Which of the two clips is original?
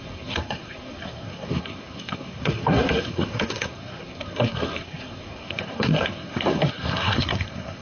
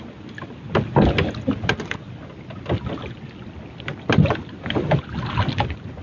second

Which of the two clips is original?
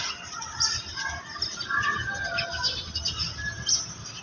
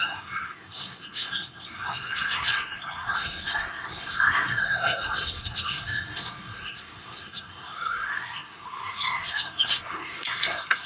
first